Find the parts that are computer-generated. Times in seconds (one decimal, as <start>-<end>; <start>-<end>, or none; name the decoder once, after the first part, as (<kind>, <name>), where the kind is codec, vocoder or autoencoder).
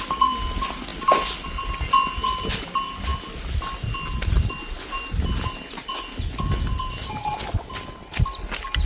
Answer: none